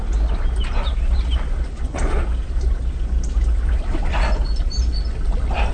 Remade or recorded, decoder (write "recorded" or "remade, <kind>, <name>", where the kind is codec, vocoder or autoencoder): recorded